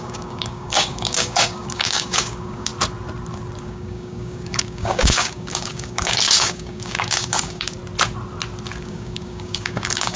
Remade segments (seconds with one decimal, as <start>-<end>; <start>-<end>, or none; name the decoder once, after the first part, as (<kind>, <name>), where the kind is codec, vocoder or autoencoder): 0.0-2.7 (codec, DAC); 3.6-7.8; 8.8-10.2